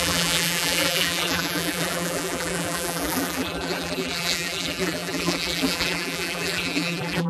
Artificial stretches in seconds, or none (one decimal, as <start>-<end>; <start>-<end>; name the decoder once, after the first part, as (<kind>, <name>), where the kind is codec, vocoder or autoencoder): 0.0-7.3 (vocoder, BigVGAN v2)